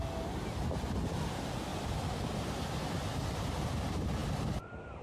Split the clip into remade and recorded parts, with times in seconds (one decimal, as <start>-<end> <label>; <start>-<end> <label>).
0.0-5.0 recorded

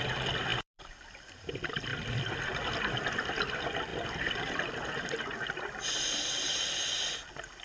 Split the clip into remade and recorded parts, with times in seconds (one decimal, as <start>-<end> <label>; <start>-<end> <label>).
0.0-0.5 recorded; 0.5-1.4 remade; 1.4-1.9 recorded; 1.9-2.5 remade; 2.5-7.6 recorded

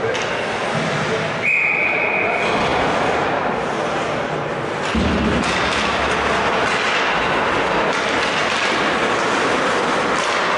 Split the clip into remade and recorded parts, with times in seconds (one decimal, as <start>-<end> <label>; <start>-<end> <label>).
0.0-10.6 recorded

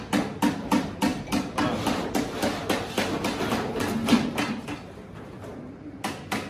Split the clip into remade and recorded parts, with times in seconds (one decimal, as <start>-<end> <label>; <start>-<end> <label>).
0.0-6.5 recorded

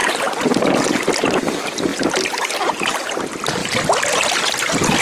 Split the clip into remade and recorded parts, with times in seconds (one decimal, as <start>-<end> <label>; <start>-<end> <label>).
0.0-0.7 remade; 0.7-1.9 recorded; 1.9-3.0 remade; 3.0-5.0 recorded